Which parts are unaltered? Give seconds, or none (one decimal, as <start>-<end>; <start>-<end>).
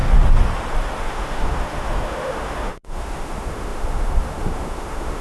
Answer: 0.0-1.0